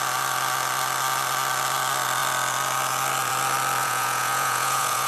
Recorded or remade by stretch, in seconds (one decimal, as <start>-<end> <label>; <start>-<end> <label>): 0.0-3.8 recorded; 3.8-5.1 remade